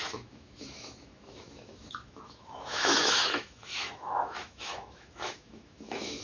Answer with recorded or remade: remade